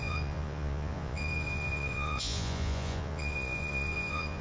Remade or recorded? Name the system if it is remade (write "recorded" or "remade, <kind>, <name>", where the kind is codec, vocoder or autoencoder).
remade, vocoder, Vocos